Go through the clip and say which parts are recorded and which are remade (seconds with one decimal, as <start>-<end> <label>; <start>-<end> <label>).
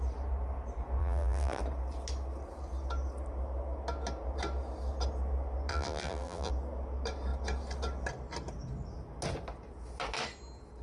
0.0-1.0 recorded; 1.0-1.6 remade; 1.6-5.7 recorded; 5.7-6.5 remade; 6.5-10.8 recorded